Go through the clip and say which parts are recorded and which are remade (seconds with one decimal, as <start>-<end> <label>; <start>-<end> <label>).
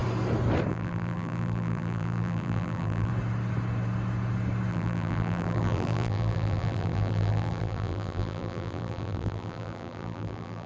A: 0.0-0.7 recorded; 0.7-3.1 remade; 3.1-4.7 recorded; 4.7-10.7 remade